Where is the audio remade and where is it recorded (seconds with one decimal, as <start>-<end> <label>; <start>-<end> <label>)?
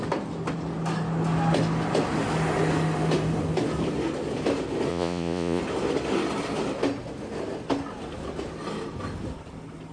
0.0-4.9 recorded; 4.9-5.6 remade; 5.6-9.9 recorded